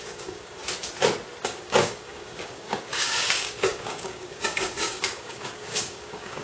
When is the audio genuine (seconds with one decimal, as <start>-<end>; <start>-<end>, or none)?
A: 0.6-1.4